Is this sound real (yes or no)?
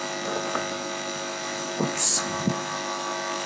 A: no